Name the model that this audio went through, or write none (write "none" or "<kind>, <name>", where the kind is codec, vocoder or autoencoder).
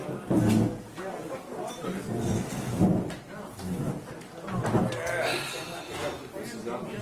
none